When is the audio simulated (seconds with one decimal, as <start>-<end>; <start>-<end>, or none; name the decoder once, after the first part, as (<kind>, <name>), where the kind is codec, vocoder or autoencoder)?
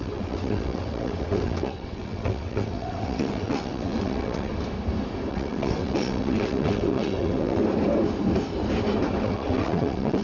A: 0.0-4.5 (vocoder, WaveNeXt); 5.3-7.6; 9.2-10.2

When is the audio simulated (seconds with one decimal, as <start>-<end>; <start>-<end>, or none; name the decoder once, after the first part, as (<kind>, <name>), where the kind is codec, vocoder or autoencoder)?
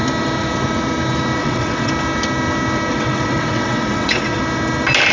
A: 1.4-1.9 (vocoder, WaveNeXt); 2.9-4.4